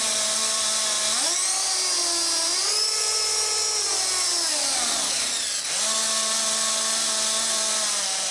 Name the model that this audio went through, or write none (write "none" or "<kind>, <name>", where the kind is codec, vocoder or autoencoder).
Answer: none